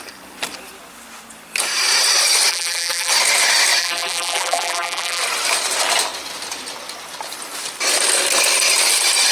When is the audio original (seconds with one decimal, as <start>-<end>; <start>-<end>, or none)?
0.0-2.5; 3.1-3.8; 5.2-9.3